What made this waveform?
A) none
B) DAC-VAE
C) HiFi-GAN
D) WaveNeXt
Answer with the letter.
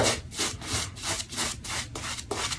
A